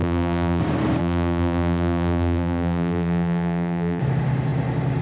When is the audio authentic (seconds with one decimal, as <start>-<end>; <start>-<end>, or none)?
0.6-1.0; 4.0-5.0